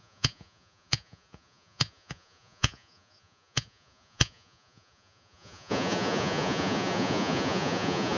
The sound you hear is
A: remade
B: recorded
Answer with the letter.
A